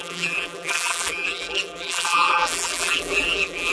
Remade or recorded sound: remade